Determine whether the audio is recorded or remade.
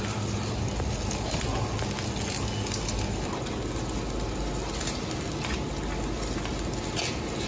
recorded